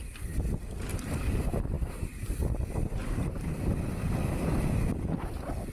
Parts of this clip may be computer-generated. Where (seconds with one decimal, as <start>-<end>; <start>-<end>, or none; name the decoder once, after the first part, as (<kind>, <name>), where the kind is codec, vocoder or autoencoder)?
0.9-2.4 (vocoder, BigVGAN v2); 3.0-3.7